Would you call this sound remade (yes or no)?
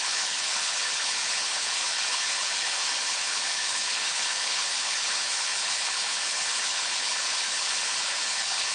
yes